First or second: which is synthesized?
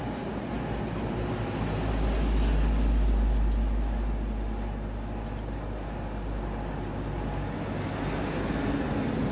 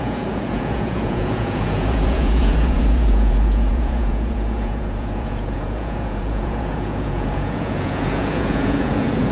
second